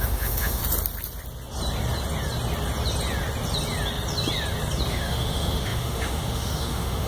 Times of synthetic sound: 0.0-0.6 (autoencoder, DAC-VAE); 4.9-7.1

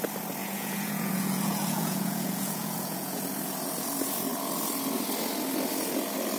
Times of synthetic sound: 0.4-3.2 (vocoder, Vocos)